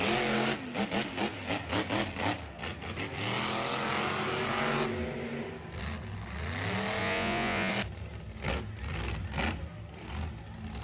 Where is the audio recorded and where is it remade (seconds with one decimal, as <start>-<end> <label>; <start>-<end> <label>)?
0.0-7.0 recorded; 7.0-7.7 remade; 7.7-10.8 recorded